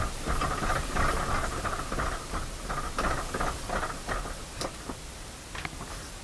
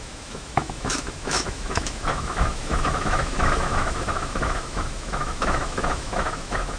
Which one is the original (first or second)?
first